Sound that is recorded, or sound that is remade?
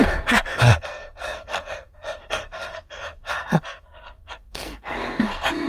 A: remade